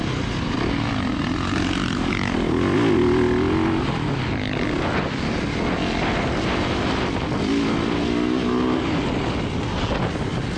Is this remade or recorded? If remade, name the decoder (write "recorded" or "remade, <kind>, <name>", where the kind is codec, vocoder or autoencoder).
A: recorded